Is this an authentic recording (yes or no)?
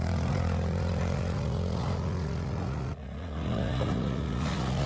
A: no